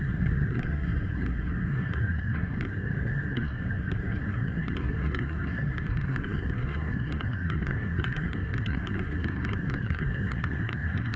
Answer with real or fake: fake